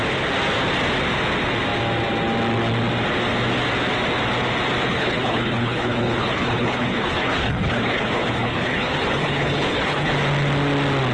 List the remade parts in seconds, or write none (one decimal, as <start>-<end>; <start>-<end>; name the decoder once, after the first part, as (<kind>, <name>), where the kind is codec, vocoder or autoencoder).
4.9-10.1 (codec, HILCodec)